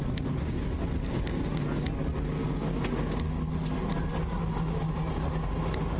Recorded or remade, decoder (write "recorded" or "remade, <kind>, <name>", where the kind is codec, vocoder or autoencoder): recorded